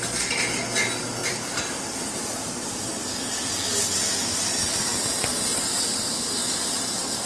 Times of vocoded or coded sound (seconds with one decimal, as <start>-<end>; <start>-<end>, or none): 1.2-3.2